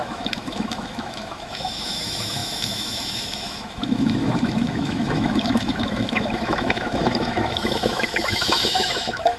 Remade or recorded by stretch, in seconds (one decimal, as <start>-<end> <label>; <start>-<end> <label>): 0.0-9.4 remade

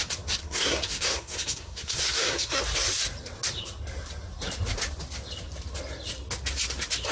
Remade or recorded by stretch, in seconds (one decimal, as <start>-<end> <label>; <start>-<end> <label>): 0.0-0.4 recorded; 0.4-2.6 remade; 2.6-7.1 recorded